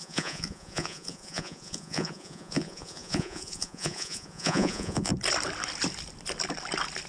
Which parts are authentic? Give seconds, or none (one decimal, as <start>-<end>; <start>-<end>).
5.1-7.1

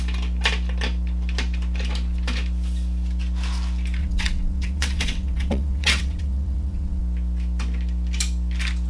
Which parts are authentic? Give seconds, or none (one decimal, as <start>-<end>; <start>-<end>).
0.0-4.0; 7.0-8.9

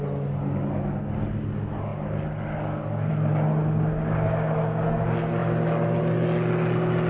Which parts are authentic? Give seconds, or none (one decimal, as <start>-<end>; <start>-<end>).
0.0-7.1

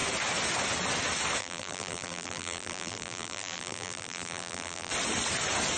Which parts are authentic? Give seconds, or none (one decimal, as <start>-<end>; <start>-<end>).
0.0-1.4; 4.9-5.8

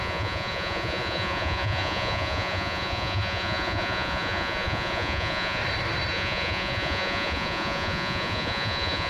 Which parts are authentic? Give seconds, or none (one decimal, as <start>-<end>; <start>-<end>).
5.6-6.1

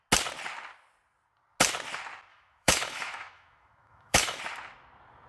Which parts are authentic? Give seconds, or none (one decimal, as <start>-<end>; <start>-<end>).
0.0-2.3; 4.4-5.3